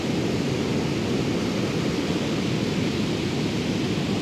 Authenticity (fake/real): real